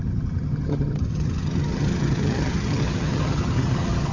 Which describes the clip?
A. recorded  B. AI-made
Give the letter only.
B